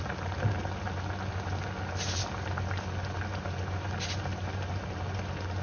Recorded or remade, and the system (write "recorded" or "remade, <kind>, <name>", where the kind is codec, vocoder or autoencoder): recorded